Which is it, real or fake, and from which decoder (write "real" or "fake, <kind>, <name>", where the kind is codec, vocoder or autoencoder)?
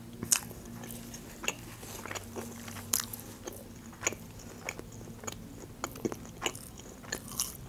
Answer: real